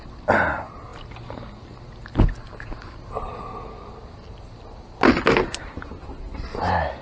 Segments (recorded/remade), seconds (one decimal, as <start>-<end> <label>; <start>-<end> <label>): 0.0-7.0 recorded